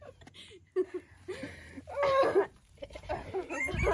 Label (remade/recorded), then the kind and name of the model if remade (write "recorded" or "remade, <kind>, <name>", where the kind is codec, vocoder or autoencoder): remade, vocoder, BigVGAN v2